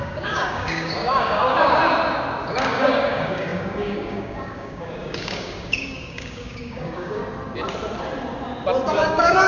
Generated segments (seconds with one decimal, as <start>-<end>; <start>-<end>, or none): 0.0-1.8; 2.5-7.2; 8.9-9.5